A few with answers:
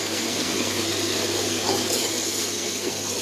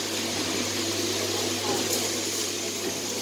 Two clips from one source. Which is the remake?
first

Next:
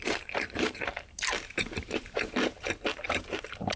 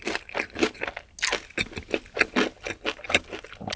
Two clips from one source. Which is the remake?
first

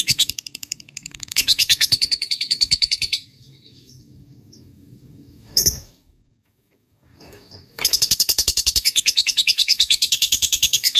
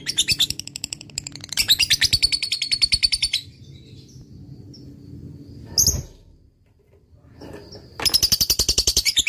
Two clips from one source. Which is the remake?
first